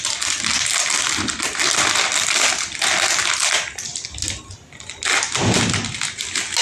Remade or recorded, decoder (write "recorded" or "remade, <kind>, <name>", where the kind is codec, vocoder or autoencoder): recorded